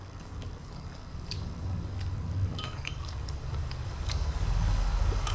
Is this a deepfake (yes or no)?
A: yes